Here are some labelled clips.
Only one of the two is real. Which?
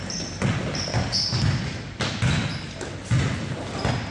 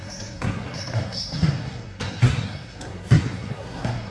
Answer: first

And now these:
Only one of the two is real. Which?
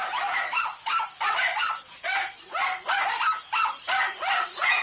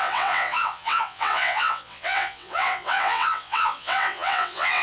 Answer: first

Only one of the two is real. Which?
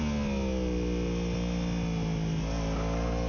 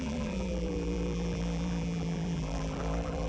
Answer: first